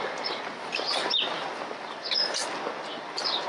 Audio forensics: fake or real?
real